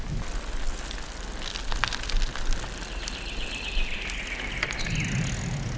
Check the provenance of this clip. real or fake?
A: real